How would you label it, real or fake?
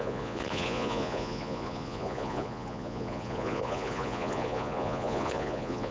fake